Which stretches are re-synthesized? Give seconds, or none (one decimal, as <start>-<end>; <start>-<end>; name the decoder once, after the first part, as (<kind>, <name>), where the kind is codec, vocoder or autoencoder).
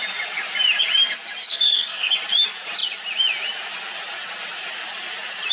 1.4-2.1 (codec, SNAC)